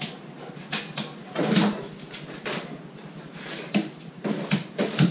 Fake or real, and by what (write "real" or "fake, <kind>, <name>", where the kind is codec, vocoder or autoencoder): real